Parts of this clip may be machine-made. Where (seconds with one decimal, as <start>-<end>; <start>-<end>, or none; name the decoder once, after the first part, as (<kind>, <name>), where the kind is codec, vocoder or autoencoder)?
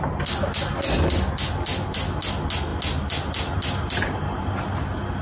none